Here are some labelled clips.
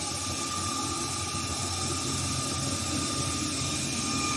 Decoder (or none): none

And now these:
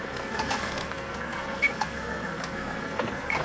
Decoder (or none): codec, SNAC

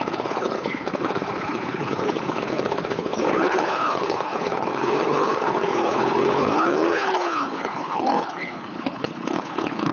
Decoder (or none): codec, HILCodec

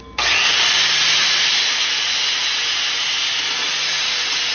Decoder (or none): none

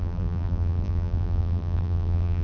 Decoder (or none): vocoder, BigVGAN v2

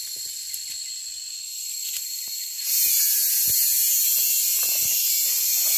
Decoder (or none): none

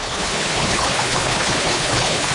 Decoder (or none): codec, HILCodec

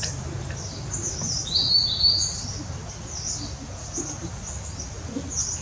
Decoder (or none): none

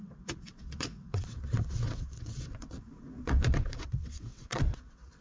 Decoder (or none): vocoder, WaveNeXt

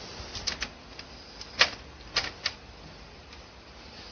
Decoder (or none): none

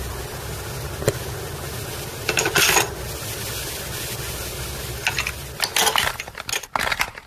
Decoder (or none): none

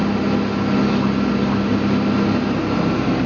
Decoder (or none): none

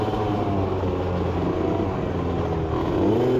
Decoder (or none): none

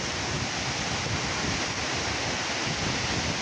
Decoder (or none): none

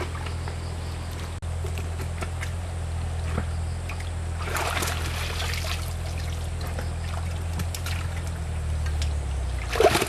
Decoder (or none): none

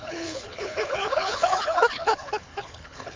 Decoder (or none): codec, HILCodec